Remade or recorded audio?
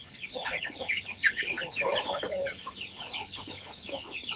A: remade